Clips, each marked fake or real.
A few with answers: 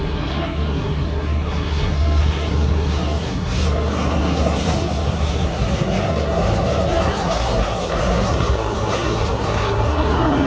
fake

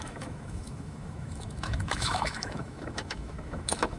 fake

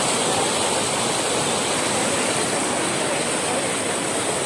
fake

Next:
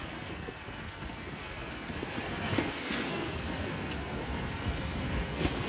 fake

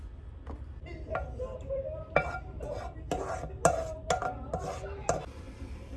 real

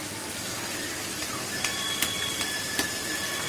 real